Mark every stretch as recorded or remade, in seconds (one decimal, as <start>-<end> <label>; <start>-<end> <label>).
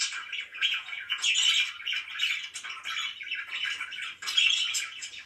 0.0-0.5 recorded; 0.5-1.3 remade; 1.3-5.3 recorded